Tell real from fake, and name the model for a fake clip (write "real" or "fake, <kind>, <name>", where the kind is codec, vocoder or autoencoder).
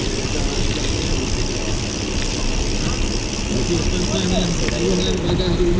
real